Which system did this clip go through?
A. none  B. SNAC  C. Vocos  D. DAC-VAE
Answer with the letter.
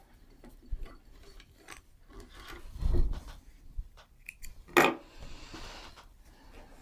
A